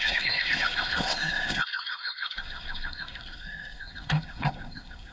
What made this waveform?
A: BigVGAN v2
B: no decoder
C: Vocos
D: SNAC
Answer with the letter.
D